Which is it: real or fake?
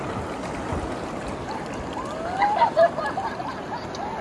real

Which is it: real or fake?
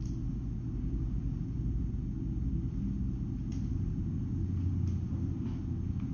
real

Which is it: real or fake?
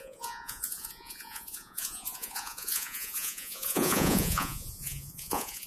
fake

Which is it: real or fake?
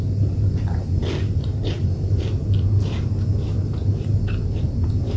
real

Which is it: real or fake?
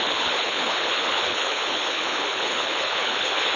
fake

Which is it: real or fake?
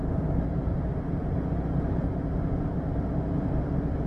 real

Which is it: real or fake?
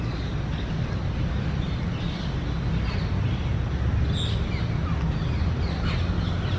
real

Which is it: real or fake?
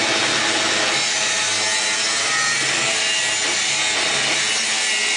real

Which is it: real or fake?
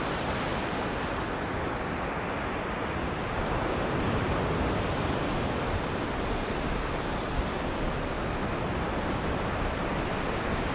real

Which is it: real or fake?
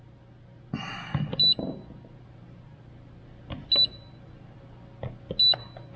real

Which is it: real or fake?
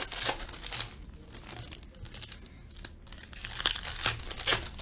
real